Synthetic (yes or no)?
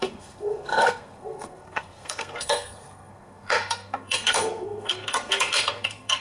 yes